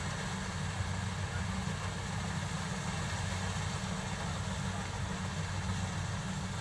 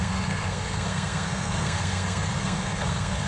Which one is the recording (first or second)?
first